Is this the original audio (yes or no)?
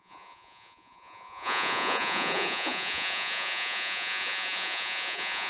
no